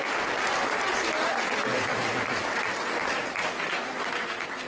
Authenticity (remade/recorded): recorded